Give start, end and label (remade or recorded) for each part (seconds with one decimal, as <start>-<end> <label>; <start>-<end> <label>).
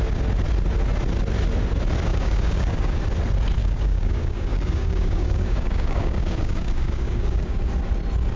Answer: 0.0-2.1 recorded; 2.1-3.0 remade; 3.0-3.6 recorded; 3.6-7.6 remade; 7.6-8.4 recorded